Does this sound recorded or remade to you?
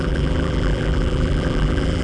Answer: remade